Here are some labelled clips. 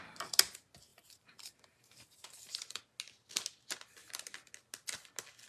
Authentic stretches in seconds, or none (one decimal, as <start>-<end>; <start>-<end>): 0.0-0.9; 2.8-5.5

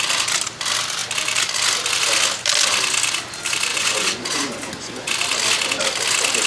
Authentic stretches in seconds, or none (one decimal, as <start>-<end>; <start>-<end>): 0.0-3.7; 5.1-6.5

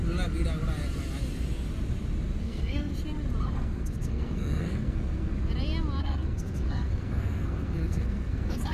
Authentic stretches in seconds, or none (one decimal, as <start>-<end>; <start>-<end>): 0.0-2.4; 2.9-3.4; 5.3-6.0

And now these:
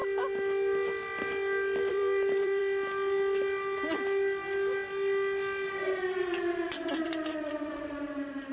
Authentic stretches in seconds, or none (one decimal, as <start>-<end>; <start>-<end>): 0.0-1.9; 2.6-6.1

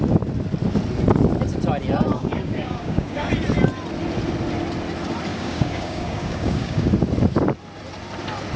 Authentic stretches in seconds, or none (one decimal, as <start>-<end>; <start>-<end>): 0.0-2.1; 3.3-5.3; 6.9-8.6

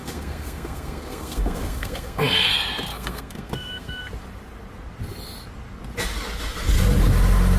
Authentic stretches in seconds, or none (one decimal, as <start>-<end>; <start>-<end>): 2.5-2.9; 4.0-7.6

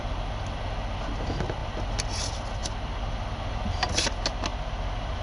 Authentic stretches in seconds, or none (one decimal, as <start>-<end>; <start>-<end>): 0.0-5.2

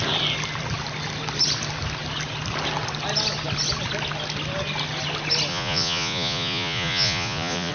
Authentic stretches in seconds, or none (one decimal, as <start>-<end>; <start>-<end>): 0.0-5.5